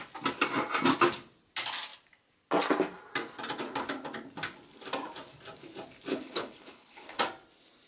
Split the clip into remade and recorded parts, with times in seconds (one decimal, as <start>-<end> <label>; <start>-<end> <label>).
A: 0.0-6.1 recorded; 6.1-7.2 remade; 7.2-7.9 recorded